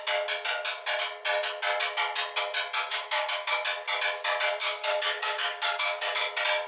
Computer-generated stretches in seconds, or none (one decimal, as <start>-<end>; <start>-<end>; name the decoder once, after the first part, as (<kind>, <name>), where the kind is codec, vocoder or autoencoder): 2.9-3.5 (codec, DAC); 4.6-6.3